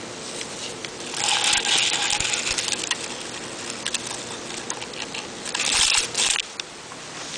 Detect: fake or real real